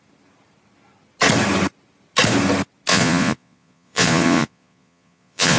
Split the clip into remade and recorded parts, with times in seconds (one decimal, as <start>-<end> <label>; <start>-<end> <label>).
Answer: 0.0-2.9 recorded; 2.9-5.6 remade